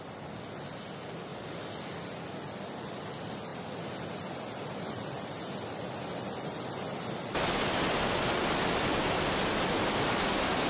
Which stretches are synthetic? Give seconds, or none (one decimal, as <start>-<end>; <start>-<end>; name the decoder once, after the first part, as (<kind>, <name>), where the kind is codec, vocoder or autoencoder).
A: none

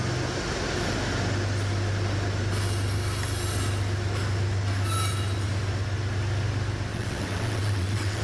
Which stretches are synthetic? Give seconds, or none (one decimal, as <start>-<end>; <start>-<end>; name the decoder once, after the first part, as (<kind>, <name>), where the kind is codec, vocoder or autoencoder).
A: 6.9-8.2 (vocoder, WaveNeXt)

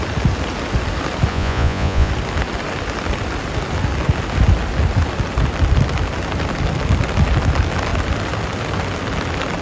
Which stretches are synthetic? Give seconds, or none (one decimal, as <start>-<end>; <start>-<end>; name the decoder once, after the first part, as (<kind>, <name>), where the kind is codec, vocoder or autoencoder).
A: 1.3-2.1 (vocoder, Vocos)